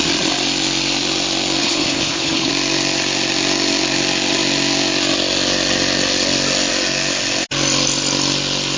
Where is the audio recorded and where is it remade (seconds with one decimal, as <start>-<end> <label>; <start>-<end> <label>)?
0.0-1.6 recorded; 1.6-2.5 remade; 2.5-8.8 recorded